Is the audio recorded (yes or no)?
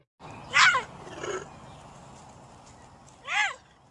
yes